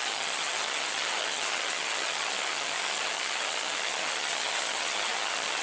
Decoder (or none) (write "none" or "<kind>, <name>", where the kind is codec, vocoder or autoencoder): vocoder, HiFi-GAN